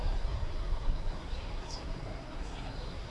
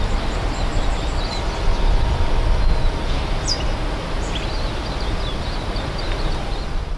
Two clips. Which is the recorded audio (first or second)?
second